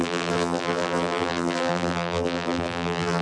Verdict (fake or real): fake